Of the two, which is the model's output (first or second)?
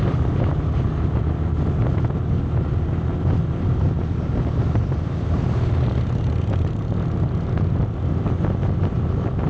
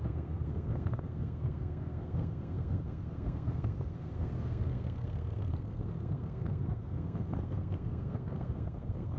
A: second